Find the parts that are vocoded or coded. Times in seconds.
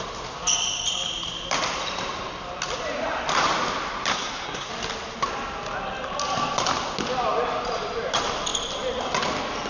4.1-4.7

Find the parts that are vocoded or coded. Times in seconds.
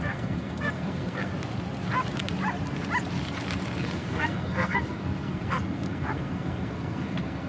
0.0-1.3; 3.8-7.5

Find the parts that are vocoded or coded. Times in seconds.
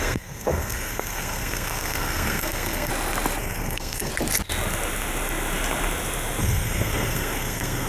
0.0-2.9; 3.4-4.1; 6.4-7.9